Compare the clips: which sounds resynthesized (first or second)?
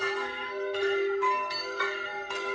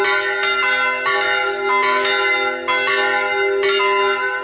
first